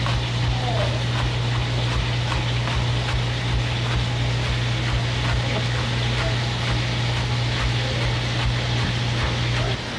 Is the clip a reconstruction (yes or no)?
no